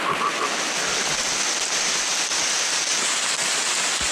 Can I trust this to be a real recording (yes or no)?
yes